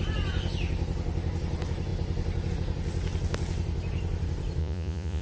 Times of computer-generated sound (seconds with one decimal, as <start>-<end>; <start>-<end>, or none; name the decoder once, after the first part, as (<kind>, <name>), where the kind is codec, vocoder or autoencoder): 4.6-5.2 (vocoder, Vocos)

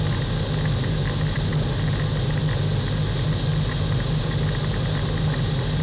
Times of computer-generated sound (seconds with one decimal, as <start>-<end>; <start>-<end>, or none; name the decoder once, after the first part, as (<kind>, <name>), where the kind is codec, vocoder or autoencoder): none

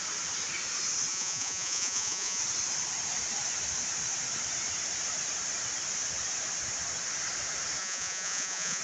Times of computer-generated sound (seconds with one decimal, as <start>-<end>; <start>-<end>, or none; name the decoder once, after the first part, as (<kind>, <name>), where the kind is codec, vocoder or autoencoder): 1.1-2.4 (vocoder, Vocos); 7.8-8.8